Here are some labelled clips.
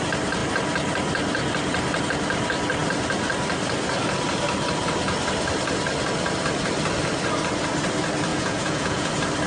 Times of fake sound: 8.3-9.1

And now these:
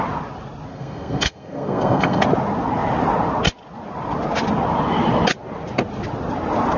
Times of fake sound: 0.7-2.2

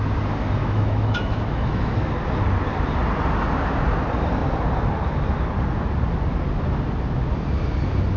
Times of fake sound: 0.6-2.1